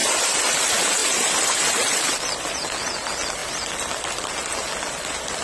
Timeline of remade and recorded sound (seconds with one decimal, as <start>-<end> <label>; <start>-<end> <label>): 0.0-1.0 recorded; 1.0-2.5 remade; 2.5-5.4 recorded